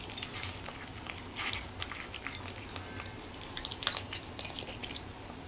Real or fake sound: real